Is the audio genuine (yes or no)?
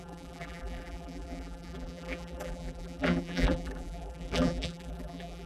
no